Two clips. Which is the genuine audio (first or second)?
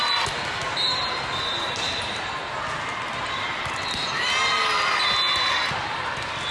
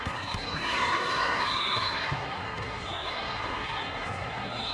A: first